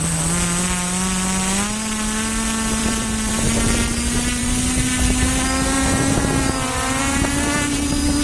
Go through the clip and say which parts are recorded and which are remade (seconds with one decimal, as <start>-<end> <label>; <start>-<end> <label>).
0.0-2.8 recorded; 2.8-3.4 remade; 3.4-4.4 recorded; 4.4-7.0 remade; 7.0-8.2 recorded